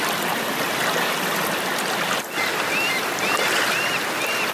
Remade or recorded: recorded